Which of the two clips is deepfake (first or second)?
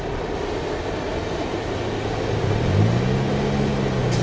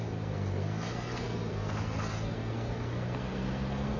second